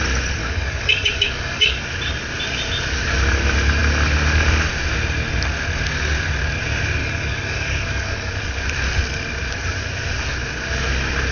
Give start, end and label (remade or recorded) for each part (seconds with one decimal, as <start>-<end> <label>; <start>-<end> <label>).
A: 0.0-0.4 recorded; 0.4-1.8 remade; 1.8-7.0 recorded; 7.0-8.3 remade; 8.3-11.3 recorded